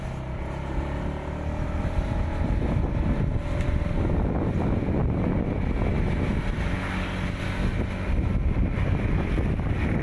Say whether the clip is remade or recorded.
recorded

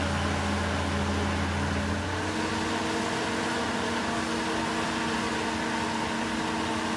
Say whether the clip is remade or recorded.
recorded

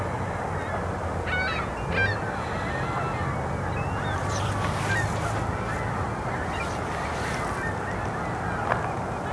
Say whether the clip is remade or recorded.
recorded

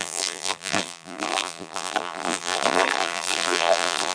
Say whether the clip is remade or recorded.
remade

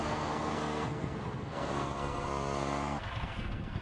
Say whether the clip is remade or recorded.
remade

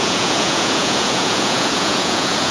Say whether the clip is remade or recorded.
remade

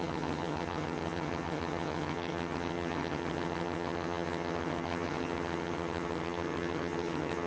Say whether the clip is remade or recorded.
remade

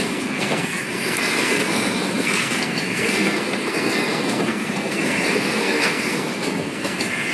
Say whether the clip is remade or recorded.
remade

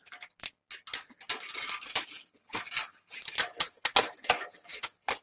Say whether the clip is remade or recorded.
recorded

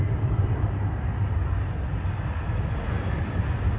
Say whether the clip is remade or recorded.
recorded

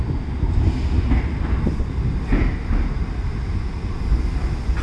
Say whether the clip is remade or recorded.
recorded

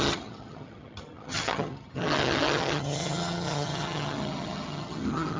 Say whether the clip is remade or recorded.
remade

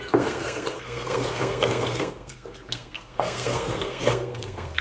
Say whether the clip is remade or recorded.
remade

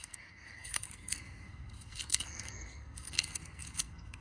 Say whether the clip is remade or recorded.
remade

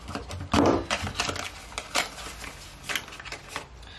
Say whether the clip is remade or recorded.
recorded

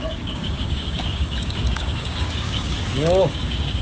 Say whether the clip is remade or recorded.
remade